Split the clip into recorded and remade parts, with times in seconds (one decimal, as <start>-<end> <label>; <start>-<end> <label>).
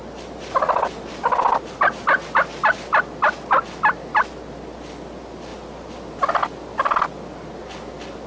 0.0-8.3 recorded